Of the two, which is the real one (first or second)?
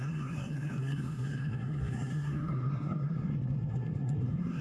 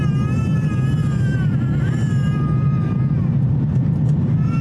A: second